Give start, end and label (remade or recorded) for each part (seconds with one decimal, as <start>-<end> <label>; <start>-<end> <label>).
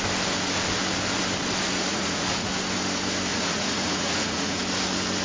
0.0-1.9 recorded; 1.9-2.5 remade; 2.5-3.3 recorded; 3.3-4.6 remade; 4.6-5.2 recorded